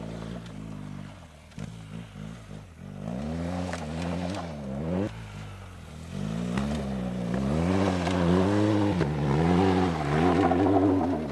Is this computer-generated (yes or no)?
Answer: no